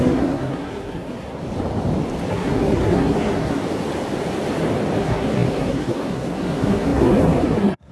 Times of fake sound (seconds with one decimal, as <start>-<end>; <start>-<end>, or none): 0.0-1.4; 2.3-3.6; 5.0-7.9